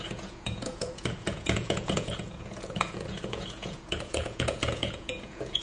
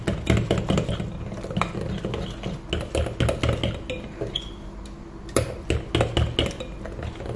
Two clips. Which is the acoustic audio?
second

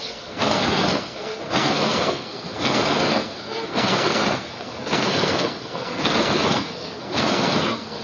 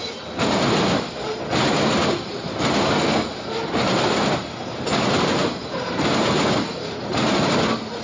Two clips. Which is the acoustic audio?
second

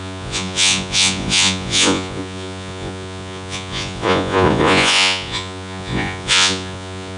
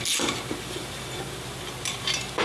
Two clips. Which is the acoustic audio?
second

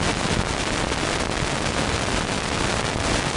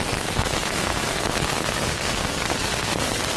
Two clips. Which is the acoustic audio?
first